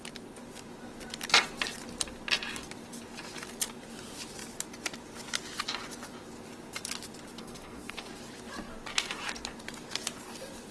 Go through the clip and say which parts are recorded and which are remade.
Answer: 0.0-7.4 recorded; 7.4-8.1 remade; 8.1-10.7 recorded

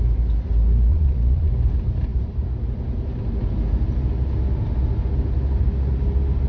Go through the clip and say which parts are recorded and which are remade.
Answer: 0.0-0.9 recorded; 0.9-1.5 remade; 1.5-6.5 recorded

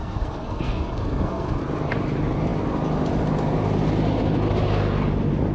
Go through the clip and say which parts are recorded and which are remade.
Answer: 0.0-1.6 remade; 1.6-5.5 recorded

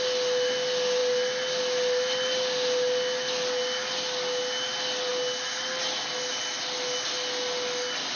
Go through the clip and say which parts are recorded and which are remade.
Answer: 0.0-8.2 recorded

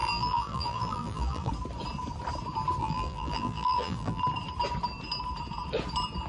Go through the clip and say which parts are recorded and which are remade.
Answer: 0.0-1.5 remade; 1.5-2.8 recorded; 2.8-4.2 remade; 4.2-6.3 recorded